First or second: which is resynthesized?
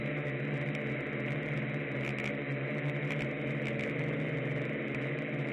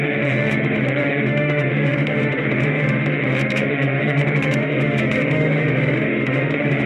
second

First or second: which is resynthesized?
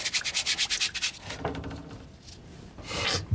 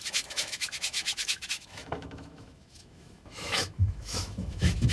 second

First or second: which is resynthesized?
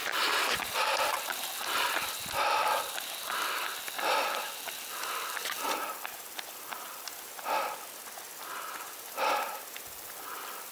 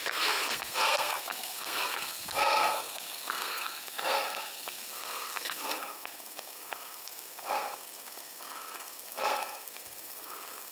second